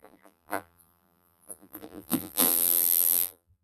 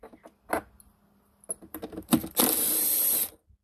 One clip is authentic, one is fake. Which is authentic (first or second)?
second